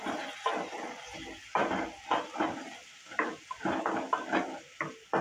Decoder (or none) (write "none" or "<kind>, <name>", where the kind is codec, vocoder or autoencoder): none